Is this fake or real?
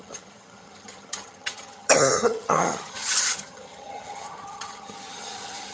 fake